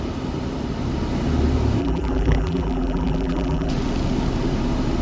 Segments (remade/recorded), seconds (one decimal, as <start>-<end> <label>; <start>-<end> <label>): 0.0-1.8 recorded; 1.8-3.7 remade; 3.7-5.0 recorded